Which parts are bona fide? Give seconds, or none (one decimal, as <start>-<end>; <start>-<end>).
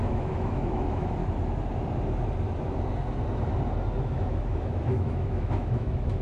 1.2-4.0